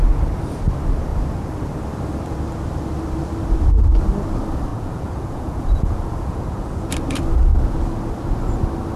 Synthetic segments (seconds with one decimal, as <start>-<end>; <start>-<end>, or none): 4.7-6.9